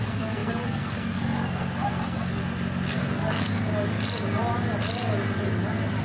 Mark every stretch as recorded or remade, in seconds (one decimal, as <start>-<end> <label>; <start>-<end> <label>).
0.0-2.4 remade; 2.4-2.9 recorded; 2.9-3.7 remade; 3.7-6.0 recorded